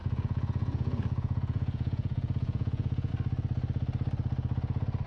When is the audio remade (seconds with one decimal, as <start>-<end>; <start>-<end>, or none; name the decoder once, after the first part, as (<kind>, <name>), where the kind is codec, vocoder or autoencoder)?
0.0-3.1 (vocoder, Vocos)